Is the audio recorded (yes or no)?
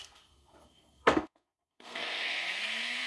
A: no